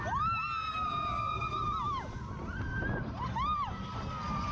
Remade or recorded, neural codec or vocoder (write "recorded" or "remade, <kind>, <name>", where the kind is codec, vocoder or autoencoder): recorded